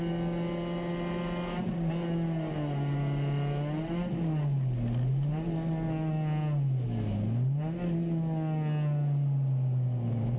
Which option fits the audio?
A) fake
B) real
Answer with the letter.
B